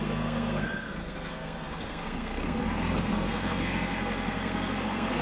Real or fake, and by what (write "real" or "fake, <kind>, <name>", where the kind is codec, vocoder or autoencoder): fake, codec, SNAC